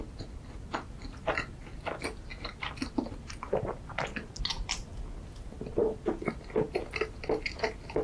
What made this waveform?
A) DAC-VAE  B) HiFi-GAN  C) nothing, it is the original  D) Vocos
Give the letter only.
C